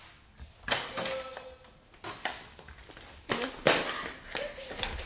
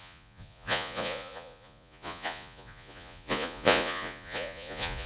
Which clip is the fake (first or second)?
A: second